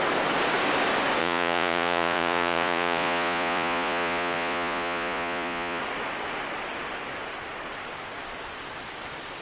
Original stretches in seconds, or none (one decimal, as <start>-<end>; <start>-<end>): 0.0-1.2; 5.8-9.4